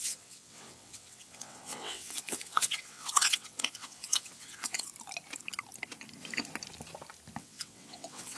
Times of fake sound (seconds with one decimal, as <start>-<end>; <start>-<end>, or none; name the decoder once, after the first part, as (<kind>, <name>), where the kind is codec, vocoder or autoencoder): 0.0-4.9 (vocoder, WaveNeXt); 7.4-8.4